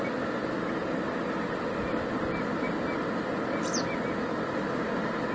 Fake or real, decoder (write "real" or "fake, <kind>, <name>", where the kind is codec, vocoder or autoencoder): real